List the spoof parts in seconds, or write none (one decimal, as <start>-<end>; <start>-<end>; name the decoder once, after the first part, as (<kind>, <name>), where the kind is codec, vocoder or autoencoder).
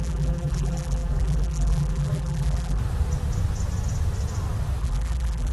0.0-2.8 (vocoder, BigVGAN v2); 4.8-5.5